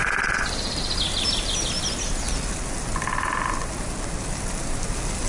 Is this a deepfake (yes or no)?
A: no